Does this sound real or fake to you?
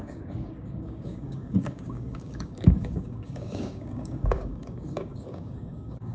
fake